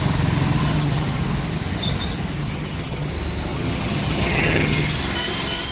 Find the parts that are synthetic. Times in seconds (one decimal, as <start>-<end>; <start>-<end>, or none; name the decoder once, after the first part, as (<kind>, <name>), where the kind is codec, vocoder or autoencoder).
0.6-1.2 (vocoder, HiFi-GAN); 2.4-3.1; 3.5-5.0